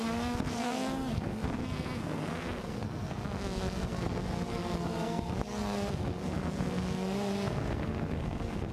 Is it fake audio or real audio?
fake